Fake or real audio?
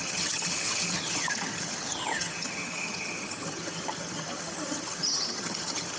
fake